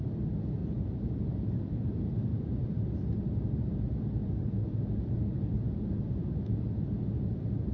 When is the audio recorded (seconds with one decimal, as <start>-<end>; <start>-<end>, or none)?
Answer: 0.6-1.3; 2.3-3.2; 4.2-7.7